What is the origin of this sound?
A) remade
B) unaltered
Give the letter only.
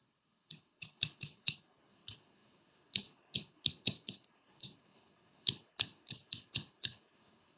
A